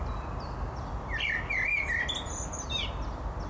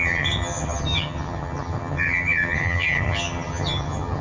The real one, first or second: first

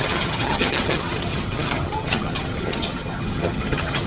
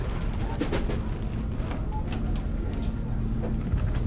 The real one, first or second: second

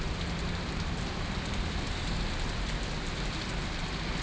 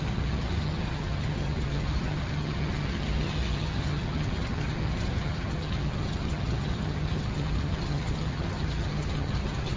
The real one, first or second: first